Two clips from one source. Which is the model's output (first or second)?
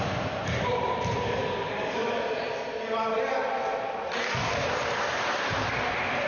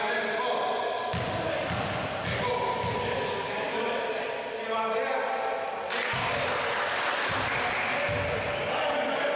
first